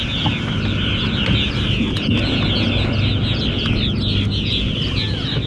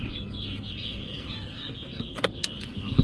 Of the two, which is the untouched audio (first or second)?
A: first